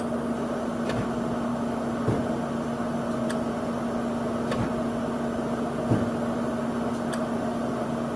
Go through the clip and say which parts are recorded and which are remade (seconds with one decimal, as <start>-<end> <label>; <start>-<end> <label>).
0.0-8.2 recorded